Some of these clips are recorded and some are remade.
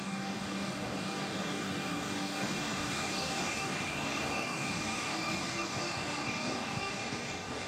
remade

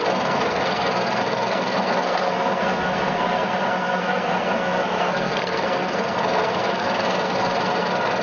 remade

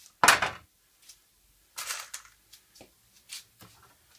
recorded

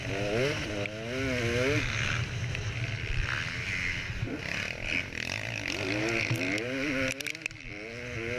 recorded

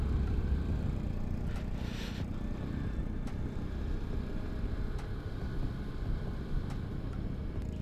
remade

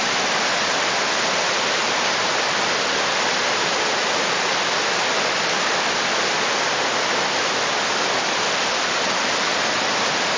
recorded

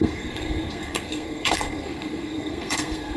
remade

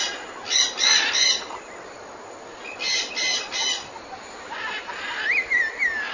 recorded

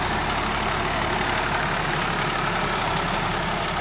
recorded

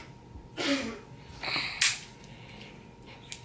recorded